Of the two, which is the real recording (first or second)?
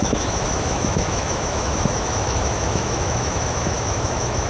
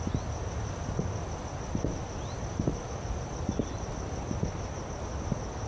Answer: second